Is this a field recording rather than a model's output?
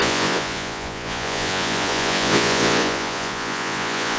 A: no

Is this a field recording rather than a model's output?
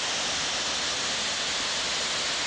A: yes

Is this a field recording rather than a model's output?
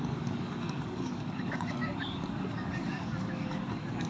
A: no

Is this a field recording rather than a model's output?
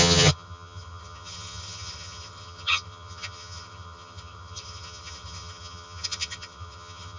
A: no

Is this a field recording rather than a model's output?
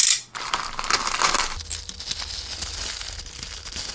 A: yes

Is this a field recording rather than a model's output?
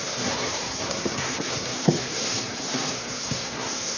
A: no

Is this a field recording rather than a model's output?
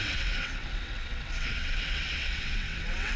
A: no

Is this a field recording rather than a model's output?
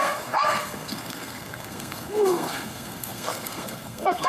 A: no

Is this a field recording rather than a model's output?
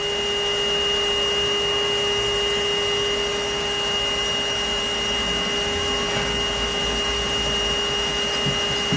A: yes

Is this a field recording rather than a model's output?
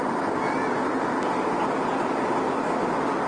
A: yes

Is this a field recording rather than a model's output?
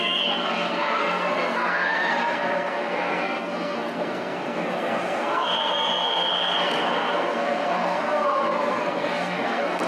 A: no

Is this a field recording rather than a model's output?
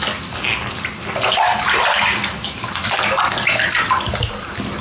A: yes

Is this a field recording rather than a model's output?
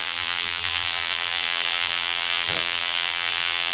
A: no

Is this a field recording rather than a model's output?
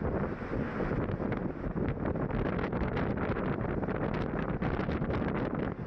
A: yes